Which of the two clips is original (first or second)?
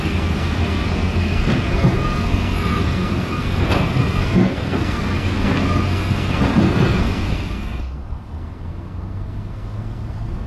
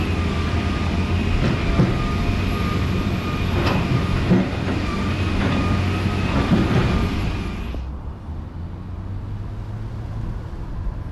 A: second